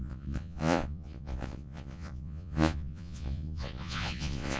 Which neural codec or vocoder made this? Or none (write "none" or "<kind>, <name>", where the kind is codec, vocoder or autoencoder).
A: vocoder, Vocos